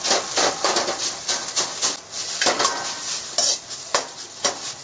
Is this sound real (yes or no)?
yes